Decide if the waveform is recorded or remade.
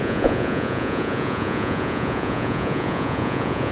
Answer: remade